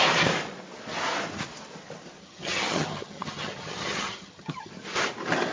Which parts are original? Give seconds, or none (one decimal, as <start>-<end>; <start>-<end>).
0.0-2.2; 4.7-5.5